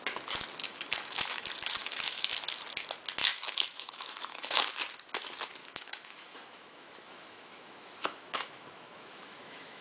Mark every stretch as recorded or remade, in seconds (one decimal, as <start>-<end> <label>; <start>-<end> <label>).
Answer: 0.0-0.6 recorded; 0.6-1.4 remade; 1.4-1.8 recorded; 1.8-2.3 remade; 2.3-3.2 recorded; 3.2-4.7 remade; 4.7-5.6 recorded; 5.6-9.8 remade